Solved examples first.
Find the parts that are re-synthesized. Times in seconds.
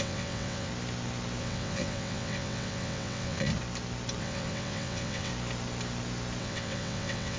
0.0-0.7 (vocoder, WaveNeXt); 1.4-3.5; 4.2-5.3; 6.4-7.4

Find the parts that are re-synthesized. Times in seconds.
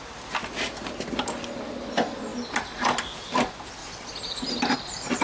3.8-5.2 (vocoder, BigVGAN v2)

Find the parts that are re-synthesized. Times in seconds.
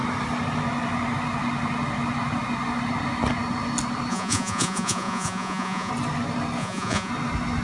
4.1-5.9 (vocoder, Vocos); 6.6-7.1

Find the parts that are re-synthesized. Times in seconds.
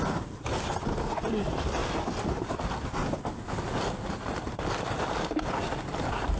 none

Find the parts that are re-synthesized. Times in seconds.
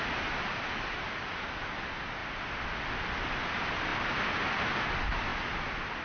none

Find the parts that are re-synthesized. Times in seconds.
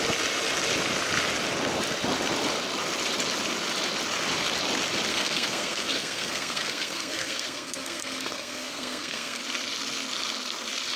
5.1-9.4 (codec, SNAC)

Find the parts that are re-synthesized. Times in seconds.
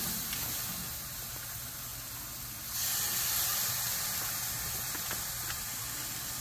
none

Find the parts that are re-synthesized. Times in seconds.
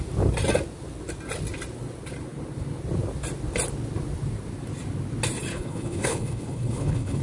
5.5-7.2 (codec, HILCodec)